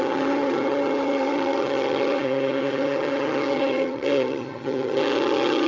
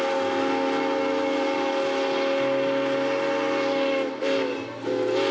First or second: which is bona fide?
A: second